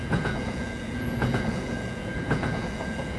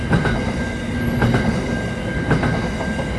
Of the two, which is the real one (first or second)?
second